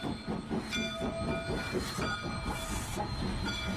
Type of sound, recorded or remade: recorded